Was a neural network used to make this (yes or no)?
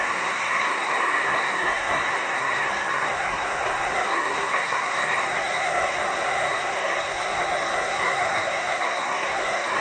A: yes